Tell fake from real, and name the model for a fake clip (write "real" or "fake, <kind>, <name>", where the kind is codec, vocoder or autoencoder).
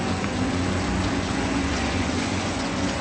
fake, vocoder, Vocos